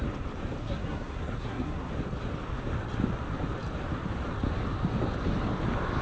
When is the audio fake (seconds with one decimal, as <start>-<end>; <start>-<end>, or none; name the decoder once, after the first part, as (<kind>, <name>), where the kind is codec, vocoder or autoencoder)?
0.6-1.9 (codec, SNAC)